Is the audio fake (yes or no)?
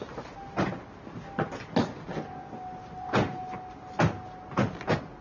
no